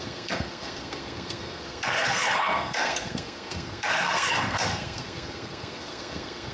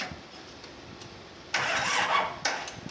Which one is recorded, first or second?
second